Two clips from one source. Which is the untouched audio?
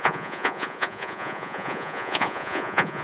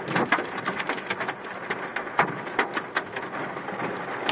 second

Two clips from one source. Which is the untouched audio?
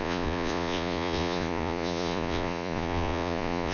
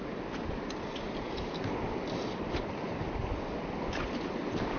second